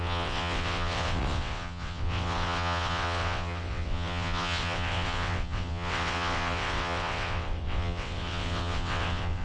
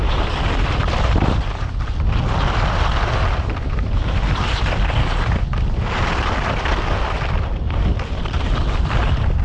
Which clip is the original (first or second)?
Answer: second